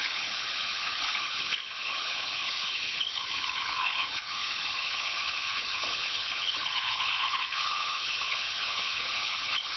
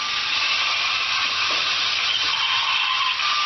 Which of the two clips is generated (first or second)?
first